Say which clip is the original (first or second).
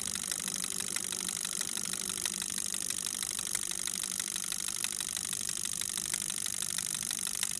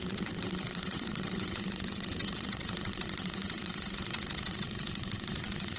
first